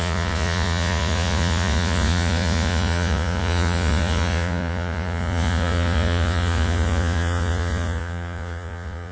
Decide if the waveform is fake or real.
fake